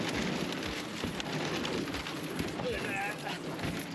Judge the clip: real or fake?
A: real